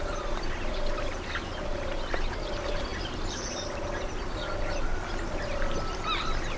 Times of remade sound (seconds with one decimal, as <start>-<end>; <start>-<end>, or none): none

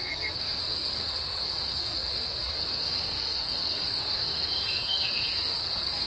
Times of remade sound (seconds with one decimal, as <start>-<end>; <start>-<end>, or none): 0.0-6.1

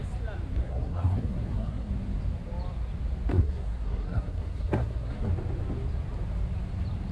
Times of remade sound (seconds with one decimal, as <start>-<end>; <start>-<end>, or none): 0.6-1.9; 3.3-5.3

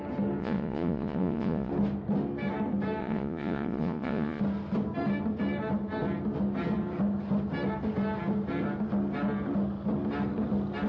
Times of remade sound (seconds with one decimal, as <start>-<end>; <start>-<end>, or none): 0.4-1.7; 3.0-4.4